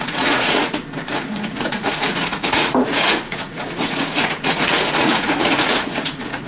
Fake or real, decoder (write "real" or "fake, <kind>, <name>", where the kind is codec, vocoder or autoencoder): fake, vocoder, Vocos